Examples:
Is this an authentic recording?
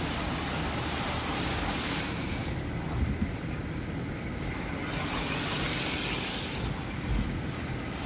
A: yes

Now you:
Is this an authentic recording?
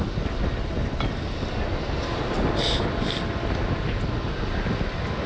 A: yes